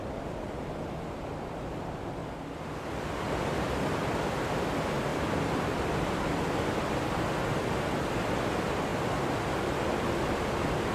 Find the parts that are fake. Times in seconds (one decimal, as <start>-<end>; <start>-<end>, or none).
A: 2.2-4.2; 5.1-6.9